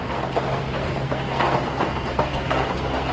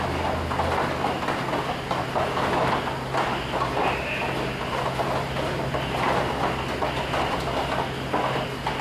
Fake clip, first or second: first